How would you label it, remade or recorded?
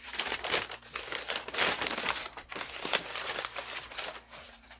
remade